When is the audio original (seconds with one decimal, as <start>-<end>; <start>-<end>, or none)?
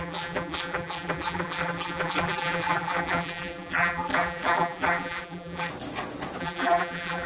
5.7-6.4